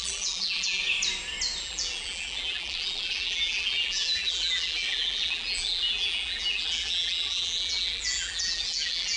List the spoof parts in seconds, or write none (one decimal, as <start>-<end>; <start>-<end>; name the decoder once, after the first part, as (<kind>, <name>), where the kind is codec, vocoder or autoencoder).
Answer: 0.0-0.8 (vocoder, BigVGAN v2); 1.6-9.2